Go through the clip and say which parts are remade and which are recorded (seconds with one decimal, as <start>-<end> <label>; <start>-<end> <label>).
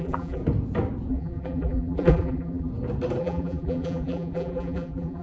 0.0-0.4 remade; 0.4-1.1 recorded; 1.1-2.7 remade; 2.7-3.2 recorded; 3.2-5.2 remade